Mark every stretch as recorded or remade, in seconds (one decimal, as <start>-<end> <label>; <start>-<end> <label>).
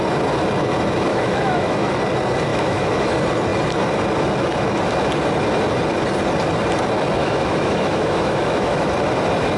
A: 0.0-1.1 recorded; 1.1-2.0 remade; 2.0-2.5 recorded; 2.5-3.1 remade; 3.1-7.2 recorded; 7.2-8.9 remade; 8.9-9.6 recorded